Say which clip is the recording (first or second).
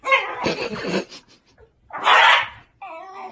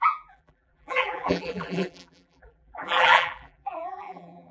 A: first